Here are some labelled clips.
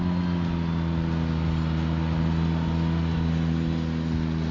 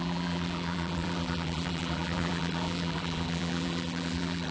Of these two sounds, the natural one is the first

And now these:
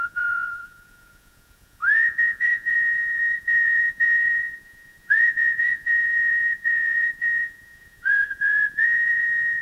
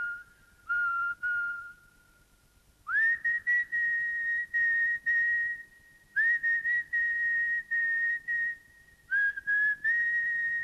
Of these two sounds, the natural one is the second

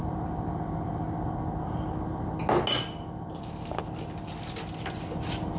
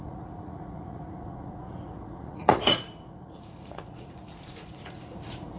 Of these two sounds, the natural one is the first